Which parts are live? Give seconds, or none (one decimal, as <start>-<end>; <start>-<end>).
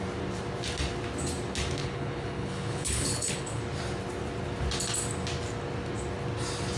0.0-1.8; 3.6-6.8